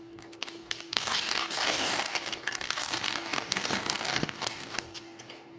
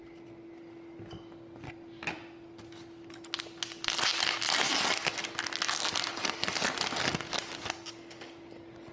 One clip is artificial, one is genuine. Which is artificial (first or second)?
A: first